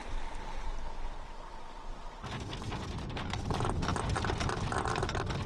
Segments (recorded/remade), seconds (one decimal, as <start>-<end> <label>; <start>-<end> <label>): 0.0-5.5 recorded